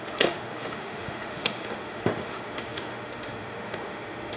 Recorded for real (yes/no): no